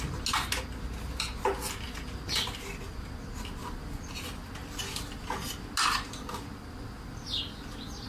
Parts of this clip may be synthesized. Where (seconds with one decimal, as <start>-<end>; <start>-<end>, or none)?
3.6-4.8